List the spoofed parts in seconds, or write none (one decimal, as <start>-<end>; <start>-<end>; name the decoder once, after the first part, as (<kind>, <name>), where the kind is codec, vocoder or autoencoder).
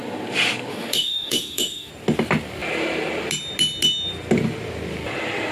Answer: 0.7-1.9 (autoencoder, DAC-VAE)